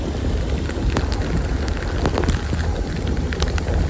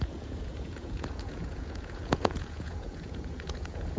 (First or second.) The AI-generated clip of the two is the second